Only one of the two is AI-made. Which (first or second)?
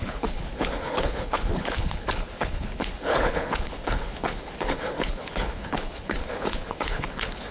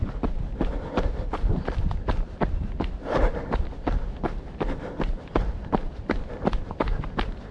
first